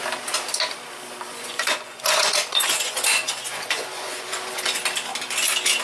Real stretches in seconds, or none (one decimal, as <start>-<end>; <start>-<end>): 0.0-1.3; 4.8-5.8